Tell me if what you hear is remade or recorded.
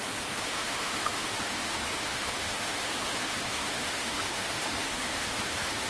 remade